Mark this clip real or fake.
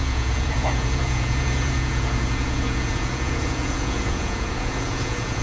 fake